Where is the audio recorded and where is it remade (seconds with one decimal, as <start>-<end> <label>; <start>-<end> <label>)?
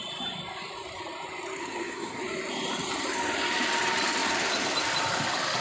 0.0-1.6 recorded; 1.6-2.2 remade; 2.2-5.6 recorded